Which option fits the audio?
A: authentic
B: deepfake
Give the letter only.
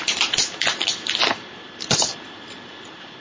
B